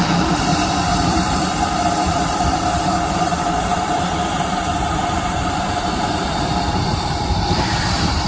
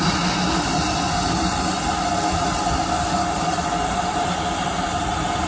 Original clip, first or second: second